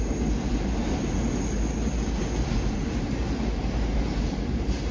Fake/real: real